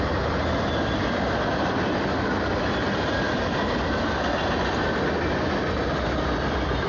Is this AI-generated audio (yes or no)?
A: no